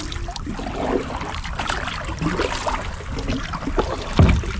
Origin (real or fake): real